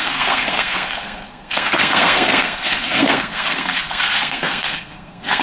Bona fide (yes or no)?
no